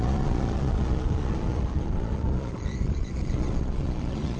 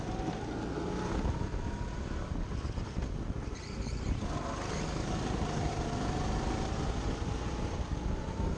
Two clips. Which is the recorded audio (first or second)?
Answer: second